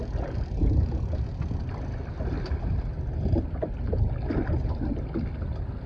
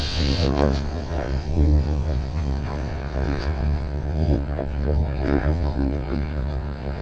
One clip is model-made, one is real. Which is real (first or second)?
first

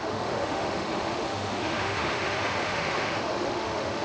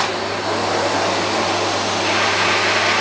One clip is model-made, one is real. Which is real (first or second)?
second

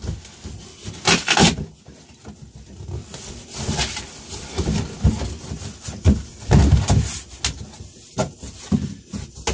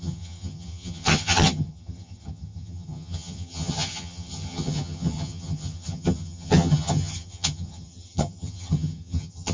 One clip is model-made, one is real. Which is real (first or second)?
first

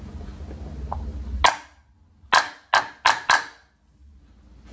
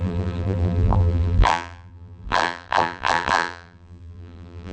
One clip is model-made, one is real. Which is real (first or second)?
first